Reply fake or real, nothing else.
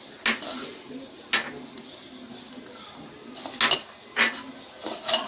real